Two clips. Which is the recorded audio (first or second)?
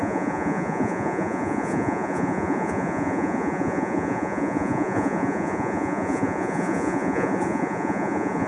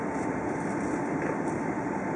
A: second